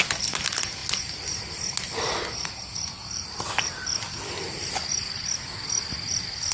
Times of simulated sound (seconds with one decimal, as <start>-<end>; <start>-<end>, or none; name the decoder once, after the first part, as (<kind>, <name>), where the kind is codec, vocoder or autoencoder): none